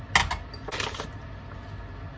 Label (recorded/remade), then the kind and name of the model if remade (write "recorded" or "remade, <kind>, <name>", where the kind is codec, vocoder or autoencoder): recorded